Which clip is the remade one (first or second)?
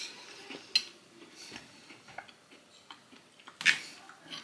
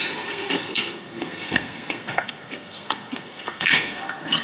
second